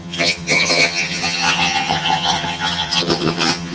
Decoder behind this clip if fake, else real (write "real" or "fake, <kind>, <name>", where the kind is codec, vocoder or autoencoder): fake, vocoder, HiFi-GAN